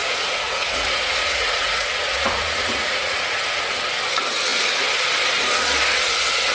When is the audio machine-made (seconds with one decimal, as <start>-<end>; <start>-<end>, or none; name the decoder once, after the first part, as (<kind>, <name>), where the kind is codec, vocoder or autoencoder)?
0.0-3.7 (vocoder, Vocos)